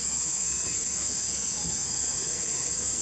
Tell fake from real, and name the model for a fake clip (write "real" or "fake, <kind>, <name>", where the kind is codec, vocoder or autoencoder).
fake, codec, SNAC